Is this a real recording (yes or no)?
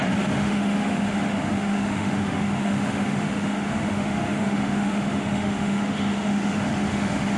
no